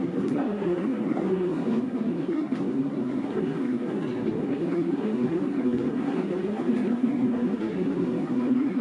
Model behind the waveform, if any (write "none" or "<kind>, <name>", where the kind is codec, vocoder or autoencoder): codec, SNAC